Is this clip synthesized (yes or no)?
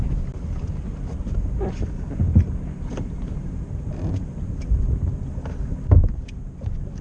no